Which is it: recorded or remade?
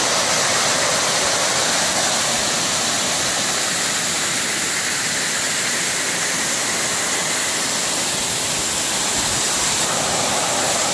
recorded